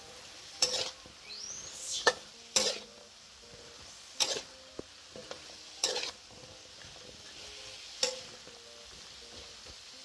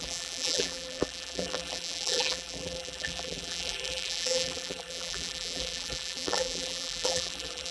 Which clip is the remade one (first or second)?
second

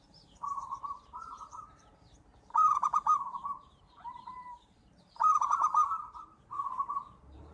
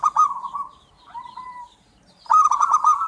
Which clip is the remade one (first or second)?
first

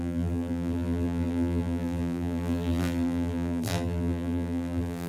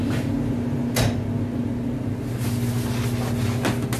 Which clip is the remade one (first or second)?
first